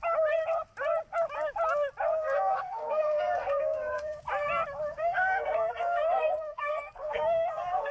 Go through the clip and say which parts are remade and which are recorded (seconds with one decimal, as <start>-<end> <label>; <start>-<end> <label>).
0.0-2.1 recorded; 2.1-4.2 remade; 4.2-4.9 recorded; 4.9-7.9 remade